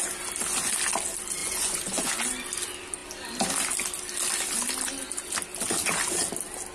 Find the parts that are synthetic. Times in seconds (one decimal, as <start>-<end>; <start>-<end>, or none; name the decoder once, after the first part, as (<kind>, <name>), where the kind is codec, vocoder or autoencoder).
1.4-2.1 (vocoder, Vocos)